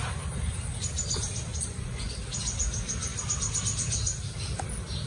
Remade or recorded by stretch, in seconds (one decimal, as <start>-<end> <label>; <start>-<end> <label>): 0.0-1.5 recorded; 1.5-2.1 remade; 2.1-5.1 recorded